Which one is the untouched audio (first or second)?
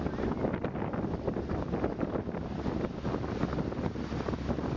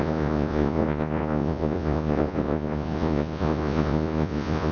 first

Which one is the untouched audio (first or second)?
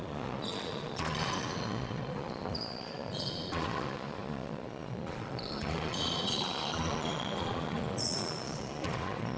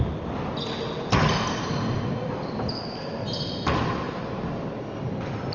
second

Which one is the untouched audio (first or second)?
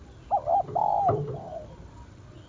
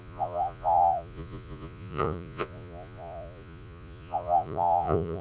first